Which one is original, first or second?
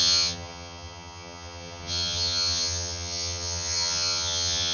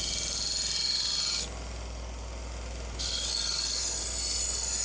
second